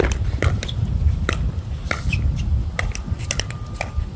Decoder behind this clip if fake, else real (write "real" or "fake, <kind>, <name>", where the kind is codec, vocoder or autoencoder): real